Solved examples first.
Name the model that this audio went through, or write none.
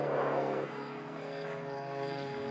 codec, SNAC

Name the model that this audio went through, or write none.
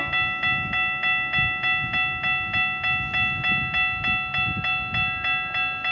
none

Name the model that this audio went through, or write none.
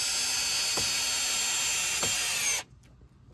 none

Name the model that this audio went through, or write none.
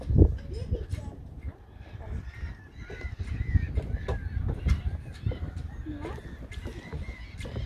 none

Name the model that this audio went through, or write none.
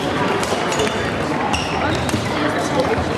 vocoder, BigVGAN v2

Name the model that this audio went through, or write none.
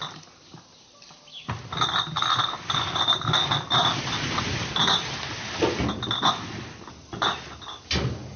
none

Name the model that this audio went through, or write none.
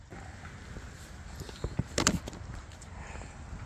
none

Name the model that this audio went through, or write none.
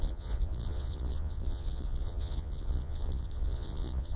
vocoder, Vocos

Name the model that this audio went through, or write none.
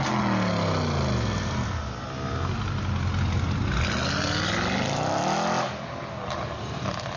none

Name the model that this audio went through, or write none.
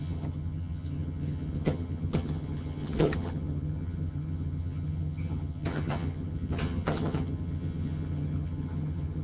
vocoder, HiFi-GAN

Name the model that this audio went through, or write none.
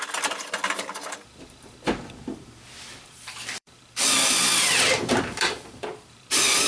vocoder, BigVGAN v2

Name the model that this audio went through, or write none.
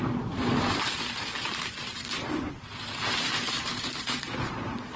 vocoder, BigVGAN v2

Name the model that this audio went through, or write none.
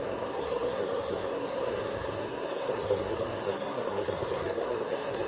codec, SNAC